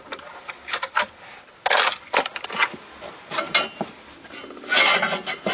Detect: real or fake real